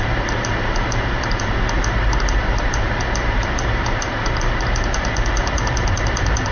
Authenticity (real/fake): fake